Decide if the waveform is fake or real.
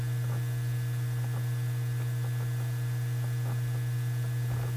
real